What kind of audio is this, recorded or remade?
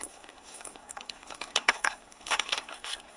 remade